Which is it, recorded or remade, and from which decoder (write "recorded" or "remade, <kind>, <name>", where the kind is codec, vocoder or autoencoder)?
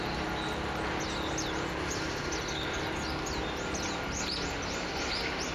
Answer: recorded